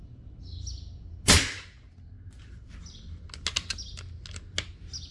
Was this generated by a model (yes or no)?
no